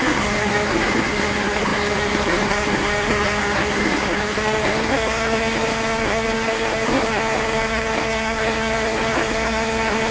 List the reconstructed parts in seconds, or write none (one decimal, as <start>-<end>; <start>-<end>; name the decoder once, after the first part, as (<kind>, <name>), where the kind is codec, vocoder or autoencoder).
0.0-10.1 (codec, SNAC)